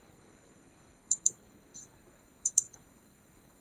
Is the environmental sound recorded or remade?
remade